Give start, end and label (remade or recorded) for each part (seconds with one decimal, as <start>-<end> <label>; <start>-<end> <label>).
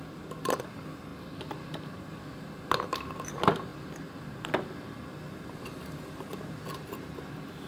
0.0-7.7 recorded